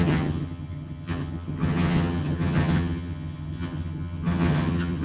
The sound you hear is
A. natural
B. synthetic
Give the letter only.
B